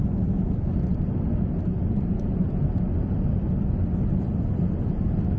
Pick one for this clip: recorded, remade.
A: recorded